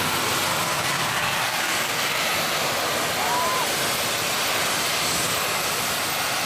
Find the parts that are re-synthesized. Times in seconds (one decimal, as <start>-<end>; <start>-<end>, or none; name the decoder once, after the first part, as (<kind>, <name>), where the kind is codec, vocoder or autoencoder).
0.5-2.2 (codec, DAC)